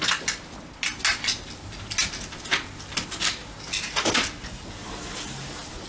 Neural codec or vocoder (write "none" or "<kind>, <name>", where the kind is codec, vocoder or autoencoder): none